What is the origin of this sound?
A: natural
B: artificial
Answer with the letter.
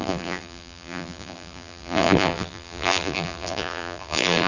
B